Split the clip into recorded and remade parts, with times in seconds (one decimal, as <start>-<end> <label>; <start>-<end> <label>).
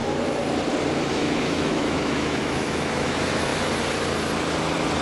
0.0-1.1 recorded; 1.1-3.5 remade; 3.5-5.0 recorded